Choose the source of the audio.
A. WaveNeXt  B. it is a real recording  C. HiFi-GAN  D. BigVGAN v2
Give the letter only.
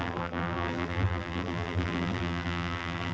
D